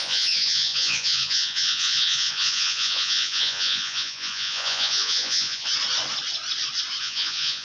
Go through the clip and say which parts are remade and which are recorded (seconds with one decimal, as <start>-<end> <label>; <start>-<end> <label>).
0.0-5.7 remade; 5.7-7.0 recorded; 7.0-7.6 remade